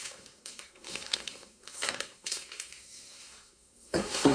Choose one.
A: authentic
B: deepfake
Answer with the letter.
B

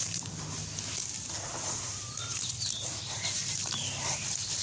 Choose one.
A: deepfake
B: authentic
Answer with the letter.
B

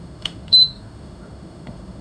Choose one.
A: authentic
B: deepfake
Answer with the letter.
B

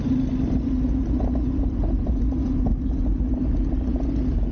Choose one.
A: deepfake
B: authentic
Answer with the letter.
B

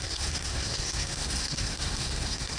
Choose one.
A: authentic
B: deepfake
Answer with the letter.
B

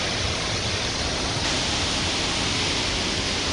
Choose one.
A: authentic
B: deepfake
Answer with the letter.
A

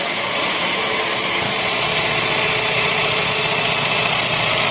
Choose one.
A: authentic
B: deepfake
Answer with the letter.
B